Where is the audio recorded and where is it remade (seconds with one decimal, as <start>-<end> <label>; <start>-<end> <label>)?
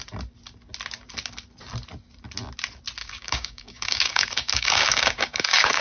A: 0.0-3.0 recorded; 3.0-5.8 remade